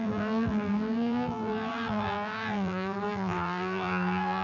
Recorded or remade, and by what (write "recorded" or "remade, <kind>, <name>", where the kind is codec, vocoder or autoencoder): remade, vocoder, BigVGAN v2